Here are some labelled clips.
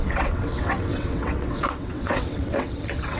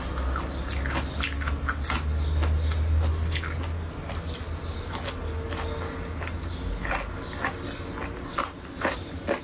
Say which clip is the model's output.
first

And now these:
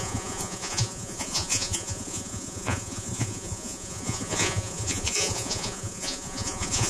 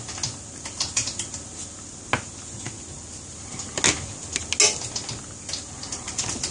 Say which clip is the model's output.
first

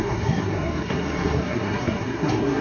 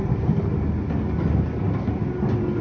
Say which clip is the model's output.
first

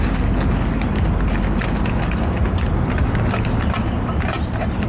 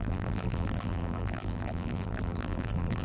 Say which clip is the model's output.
second